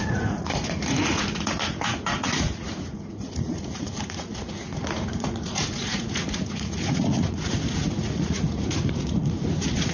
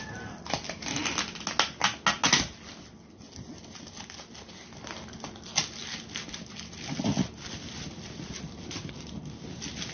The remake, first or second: first